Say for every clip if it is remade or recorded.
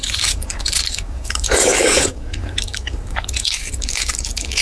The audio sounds remade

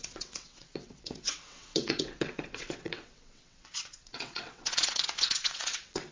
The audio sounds remade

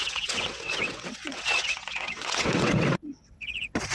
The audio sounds remade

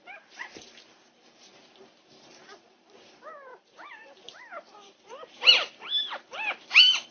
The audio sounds remade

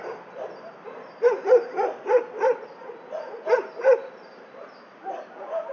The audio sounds recorded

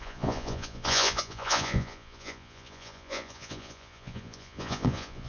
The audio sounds remade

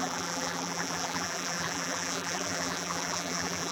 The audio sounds remade